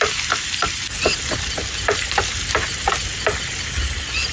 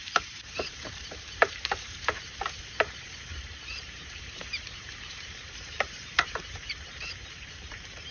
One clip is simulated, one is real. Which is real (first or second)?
first